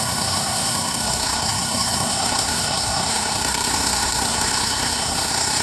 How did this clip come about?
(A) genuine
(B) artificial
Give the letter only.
B